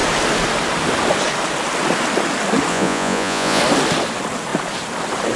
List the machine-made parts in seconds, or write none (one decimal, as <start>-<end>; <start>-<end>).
2.7-3.6